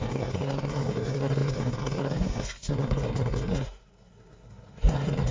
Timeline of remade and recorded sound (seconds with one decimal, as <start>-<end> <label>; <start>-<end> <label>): 0.0-5.3 remade